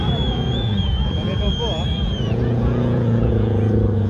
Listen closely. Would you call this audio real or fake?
fake